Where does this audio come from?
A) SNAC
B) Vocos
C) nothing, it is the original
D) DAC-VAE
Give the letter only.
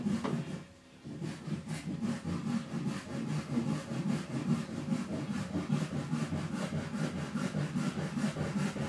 C